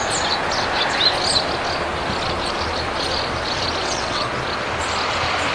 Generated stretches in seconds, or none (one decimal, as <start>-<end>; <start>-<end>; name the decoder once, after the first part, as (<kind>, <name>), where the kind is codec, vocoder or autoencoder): 3.8-4.3 (vocoder, WaveNeXt)